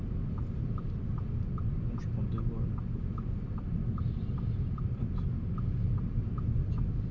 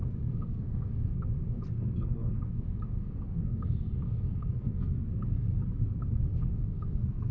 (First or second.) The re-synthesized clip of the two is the second